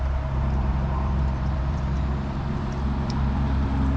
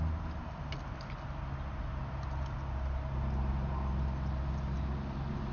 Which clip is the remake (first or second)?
first